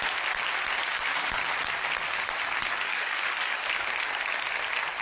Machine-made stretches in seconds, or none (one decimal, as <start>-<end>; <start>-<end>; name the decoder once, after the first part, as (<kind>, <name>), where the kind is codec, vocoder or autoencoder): 0.9-1.5 (codec, DAC); 2.9-3.6